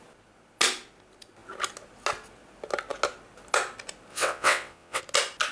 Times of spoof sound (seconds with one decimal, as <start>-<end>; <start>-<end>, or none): 4.1-5.0